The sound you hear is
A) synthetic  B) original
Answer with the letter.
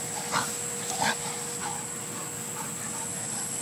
B